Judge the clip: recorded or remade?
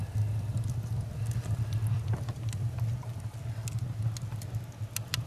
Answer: recorded